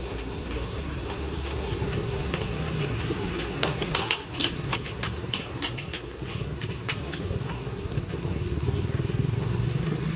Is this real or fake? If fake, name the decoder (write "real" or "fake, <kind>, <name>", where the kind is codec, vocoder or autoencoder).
fake, codec, SNAC